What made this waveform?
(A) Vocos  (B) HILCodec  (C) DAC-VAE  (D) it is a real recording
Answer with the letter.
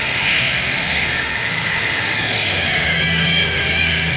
C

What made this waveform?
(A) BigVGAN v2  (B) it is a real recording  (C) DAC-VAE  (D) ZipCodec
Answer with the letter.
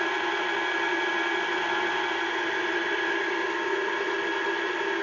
B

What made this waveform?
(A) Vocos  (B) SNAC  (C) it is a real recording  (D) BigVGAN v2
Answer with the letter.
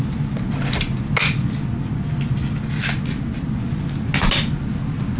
C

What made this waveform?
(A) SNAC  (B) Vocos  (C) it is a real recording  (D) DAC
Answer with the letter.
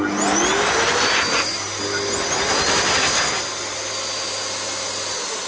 C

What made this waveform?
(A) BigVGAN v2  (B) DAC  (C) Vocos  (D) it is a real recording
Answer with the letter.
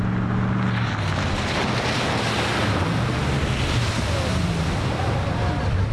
D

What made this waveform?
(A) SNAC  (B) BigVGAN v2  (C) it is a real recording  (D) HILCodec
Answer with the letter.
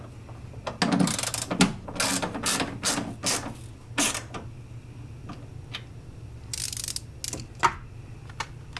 C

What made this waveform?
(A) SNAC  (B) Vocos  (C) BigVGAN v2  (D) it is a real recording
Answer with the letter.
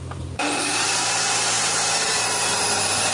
C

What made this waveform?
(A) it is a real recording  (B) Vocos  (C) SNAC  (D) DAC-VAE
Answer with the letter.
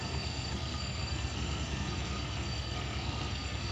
C